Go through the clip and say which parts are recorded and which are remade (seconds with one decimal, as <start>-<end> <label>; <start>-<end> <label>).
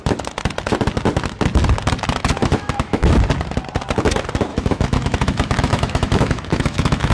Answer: 0.0-2.4 recorded; 2.4-3.1 remade; 3.1-4.5 recorded; 4.5-7.1 remade